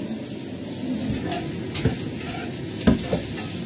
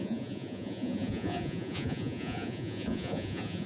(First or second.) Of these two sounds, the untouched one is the first